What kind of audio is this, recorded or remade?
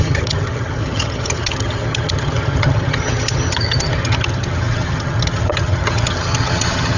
remade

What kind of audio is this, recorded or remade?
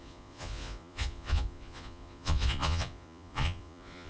remade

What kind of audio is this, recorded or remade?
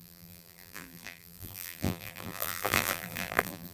remade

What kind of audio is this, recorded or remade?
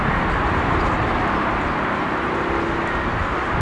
recorded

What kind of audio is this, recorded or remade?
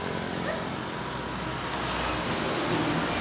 recorded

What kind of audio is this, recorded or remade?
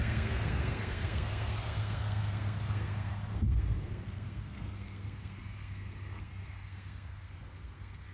remade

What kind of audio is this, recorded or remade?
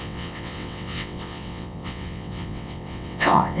remade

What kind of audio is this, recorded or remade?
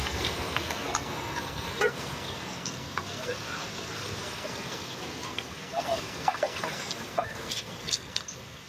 remade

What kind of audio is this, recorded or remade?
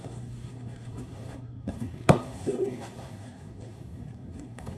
remade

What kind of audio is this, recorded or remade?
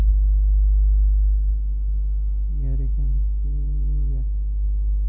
recorded